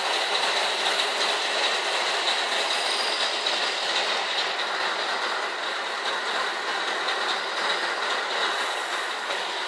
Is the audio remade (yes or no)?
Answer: no